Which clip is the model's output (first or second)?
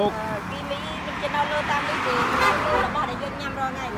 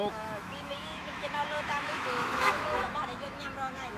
second